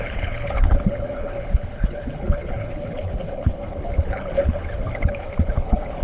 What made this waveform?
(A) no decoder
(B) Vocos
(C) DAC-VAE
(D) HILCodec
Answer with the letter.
D